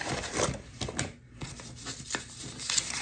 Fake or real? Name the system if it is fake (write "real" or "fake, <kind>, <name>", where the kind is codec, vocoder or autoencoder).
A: real